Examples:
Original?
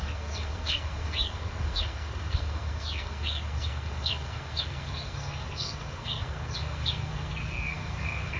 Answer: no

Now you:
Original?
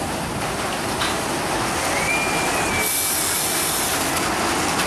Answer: yes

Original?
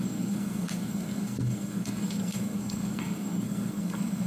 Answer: no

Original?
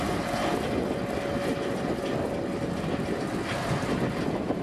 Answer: yes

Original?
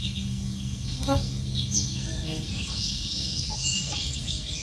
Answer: no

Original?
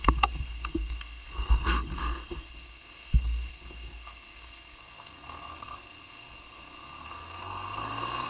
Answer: no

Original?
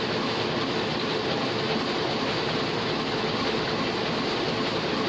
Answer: yes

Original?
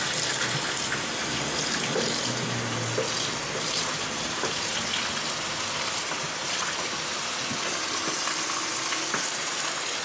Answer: yes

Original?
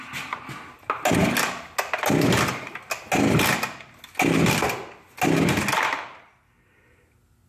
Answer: yes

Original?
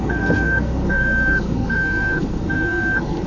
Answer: no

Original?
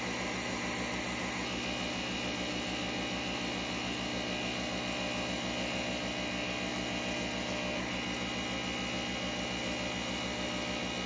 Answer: yes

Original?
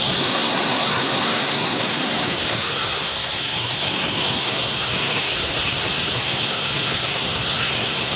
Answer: no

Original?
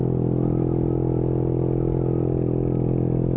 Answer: yes